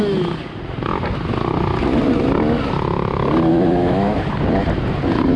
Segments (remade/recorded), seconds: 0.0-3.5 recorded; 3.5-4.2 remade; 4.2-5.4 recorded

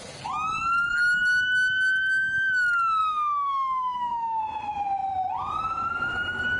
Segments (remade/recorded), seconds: 0.0-3.0 recorded; 3.0-4.4 remade; 4.4-6.6 recorded

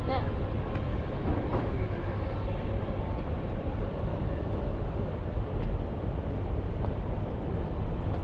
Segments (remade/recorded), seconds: 0.0-0.9 recorded; 0.9-2.2 remade; 2.2-4.1 recorded; 4.1-5.2 remade; 5.2-8.2 recorded

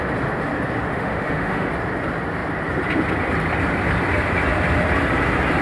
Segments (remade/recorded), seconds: 0.0-0.9 recorded; 0.9-1.7 remade; 1.7-5.6 recorded

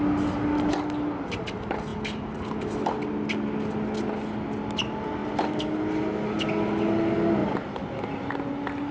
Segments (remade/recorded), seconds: 0.0-8.9 recorded

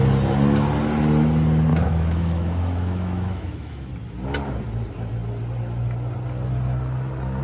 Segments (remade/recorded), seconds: 0.0-1.7 recorded; 1.7-3.9 remade; 3.9-7.4 recorded